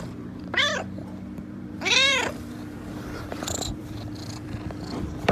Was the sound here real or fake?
fake